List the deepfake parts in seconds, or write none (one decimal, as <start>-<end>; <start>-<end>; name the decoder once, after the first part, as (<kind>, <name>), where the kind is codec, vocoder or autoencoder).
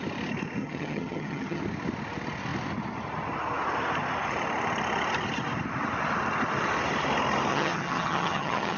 0.6-1.6 (vocoder, HiFi-GAN); 7.5-8.8